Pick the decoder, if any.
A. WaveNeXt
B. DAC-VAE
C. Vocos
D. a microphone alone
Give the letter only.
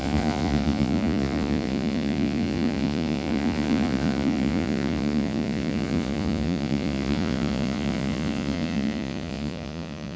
C